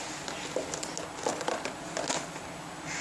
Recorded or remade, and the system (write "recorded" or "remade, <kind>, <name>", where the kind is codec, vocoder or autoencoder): recorded